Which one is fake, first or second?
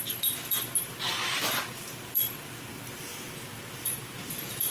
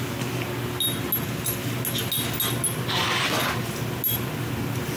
first